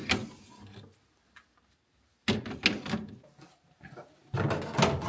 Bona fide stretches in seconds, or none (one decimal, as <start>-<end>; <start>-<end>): 0.0-5.1

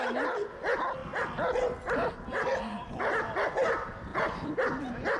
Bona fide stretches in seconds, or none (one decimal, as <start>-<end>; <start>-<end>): 0.0-5.2

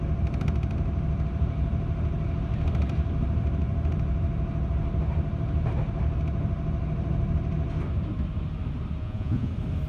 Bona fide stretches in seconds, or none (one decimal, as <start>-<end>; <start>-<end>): 0.0-9.0; 9.5-9.9

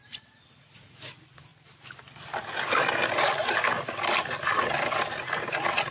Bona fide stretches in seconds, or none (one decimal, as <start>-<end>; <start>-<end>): 0.0-5.9

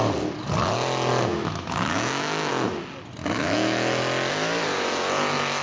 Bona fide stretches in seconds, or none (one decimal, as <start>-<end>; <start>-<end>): 0.0-1.3; 2.5-3.2; 4.0-5.6

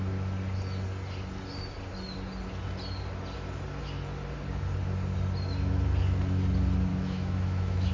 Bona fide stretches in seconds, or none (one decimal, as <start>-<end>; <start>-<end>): 0.0-6.9

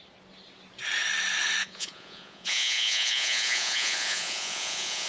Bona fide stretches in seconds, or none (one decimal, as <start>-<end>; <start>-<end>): 0.0-1.6